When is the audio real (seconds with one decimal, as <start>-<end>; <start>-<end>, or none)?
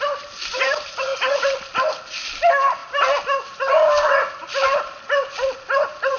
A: 0.0-6.2